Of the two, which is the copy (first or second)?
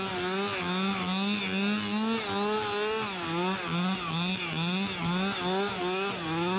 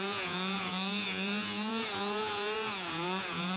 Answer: second